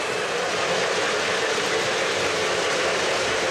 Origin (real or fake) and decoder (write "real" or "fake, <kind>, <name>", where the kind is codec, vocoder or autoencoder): real